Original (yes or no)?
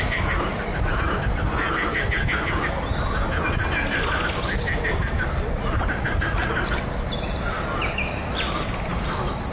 yes